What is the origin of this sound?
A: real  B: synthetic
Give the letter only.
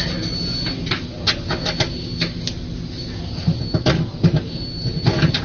A